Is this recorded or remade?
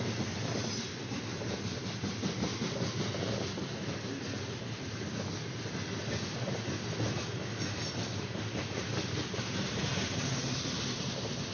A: recorded